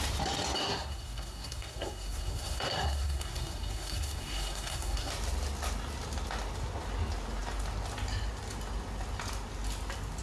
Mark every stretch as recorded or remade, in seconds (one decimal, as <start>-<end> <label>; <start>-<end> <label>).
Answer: 0.0-0.6 recorded; 0.6-5.1 remade; 5.1-10.2 recorded